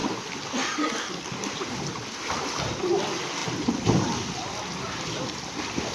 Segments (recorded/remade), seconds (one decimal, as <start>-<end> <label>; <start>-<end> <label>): 0.0-5.9 recorded